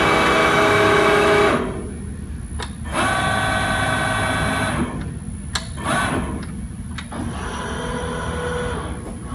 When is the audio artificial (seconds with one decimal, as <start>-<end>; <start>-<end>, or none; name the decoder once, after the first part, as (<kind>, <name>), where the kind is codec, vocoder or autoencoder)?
0.4-1.4 (autoencoder, DAC-VAE)